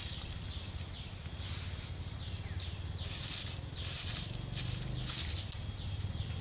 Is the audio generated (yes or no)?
no